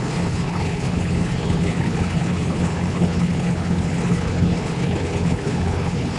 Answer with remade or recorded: remade